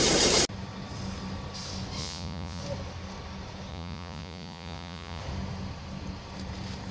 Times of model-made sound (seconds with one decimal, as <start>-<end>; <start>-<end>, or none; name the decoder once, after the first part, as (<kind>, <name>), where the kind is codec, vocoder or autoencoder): 2.0-2.6 (vocoder, Vocos); 3.7-5.2